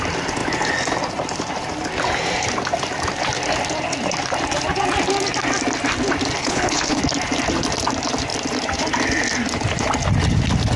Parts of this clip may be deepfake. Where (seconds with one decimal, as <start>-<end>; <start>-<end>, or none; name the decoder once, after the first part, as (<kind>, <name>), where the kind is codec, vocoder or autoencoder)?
6.4-7.0 (codec, HILCodec)

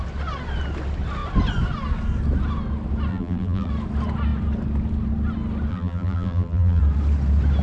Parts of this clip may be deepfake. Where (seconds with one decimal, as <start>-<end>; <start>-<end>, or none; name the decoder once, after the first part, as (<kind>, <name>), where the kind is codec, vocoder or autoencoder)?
3.1-3.7 (vocoder, BigVGAN v2); 5.7-6.8

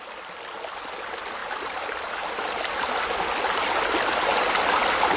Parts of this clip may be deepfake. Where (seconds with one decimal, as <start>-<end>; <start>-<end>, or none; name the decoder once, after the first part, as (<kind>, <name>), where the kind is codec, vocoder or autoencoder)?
none

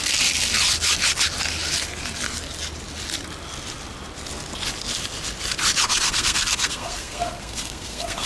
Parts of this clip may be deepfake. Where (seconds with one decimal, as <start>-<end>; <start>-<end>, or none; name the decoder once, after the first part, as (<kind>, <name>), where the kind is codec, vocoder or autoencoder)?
5.9-8.3 (codec, SNAC)